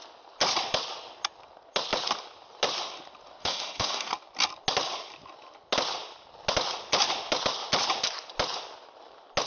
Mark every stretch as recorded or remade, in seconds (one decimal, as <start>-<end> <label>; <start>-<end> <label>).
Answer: 0.0-3.4 recorded; 3.4-4.1 remade; 4.1-9.5 recorded